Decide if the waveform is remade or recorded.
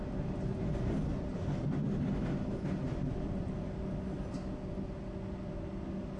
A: recorded